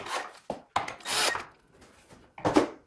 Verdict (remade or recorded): recorded